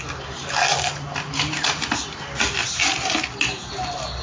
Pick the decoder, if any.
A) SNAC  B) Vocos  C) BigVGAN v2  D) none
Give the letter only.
D